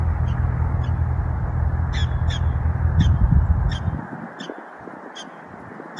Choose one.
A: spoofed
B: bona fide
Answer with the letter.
B